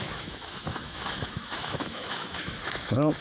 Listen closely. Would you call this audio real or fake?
fake